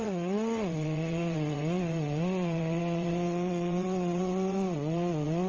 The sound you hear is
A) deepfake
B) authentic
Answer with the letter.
A